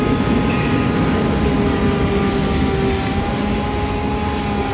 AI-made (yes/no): no